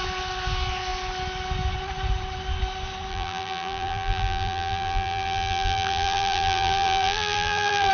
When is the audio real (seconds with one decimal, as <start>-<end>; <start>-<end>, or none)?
0.0-3.1